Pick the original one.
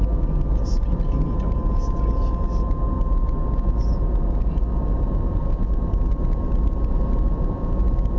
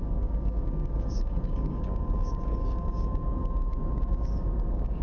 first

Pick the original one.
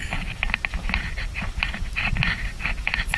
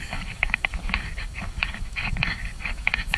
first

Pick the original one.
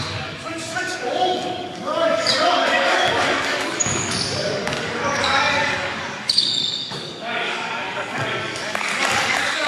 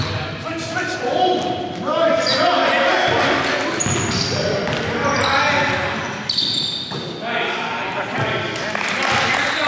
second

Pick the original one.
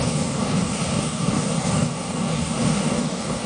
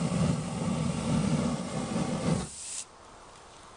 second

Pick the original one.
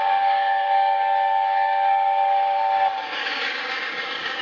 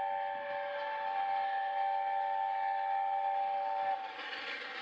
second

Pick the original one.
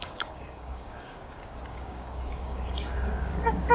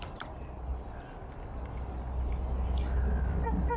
second